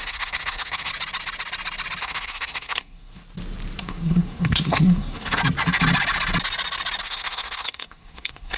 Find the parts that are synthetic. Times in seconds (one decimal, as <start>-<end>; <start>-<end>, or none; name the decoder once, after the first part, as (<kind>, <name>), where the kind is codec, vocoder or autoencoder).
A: 0.0-0.9 (codec, SNAC); 2.0-3.2; 3.8-5.4; 7.0-8.6